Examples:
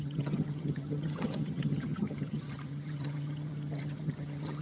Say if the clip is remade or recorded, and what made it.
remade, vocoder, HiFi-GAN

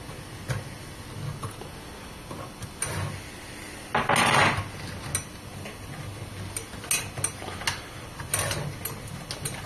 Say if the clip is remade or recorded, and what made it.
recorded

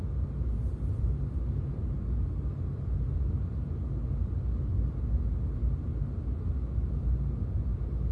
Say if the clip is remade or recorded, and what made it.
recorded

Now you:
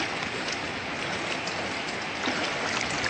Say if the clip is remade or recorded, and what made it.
recorded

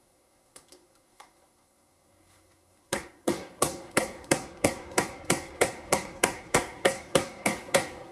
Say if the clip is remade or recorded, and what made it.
remade, codec, SNAC